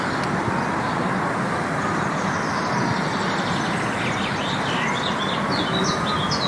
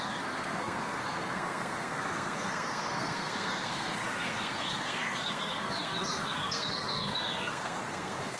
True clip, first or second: first